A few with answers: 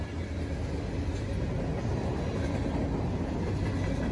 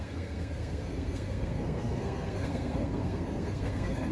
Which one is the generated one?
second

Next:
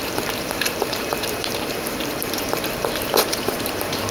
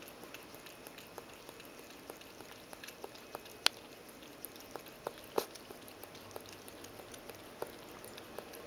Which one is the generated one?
first